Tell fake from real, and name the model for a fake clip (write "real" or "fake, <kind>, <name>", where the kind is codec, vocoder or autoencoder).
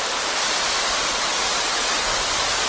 real